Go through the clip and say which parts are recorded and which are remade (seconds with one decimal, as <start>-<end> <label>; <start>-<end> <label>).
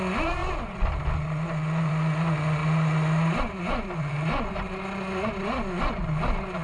0.0-6.6 recorded